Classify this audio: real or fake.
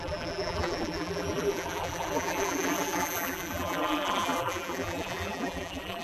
fake